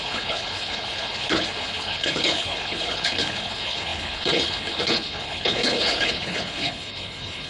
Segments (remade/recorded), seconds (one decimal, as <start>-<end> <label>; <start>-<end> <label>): 0.0-7.5 remade